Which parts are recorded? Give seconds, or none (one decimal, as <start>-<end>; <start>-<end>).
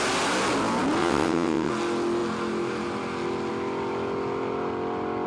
0.0-1.0; 1.7-5.3